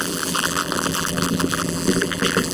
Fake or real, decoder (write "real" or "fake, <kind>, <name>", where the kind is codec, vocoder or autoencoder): fake, vocoder, BigVGAN v2